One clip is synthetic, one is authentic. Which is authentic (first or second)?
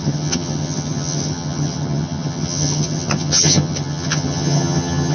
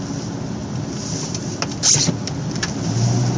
second